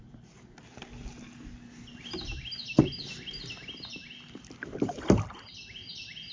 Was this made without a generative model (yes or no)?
yes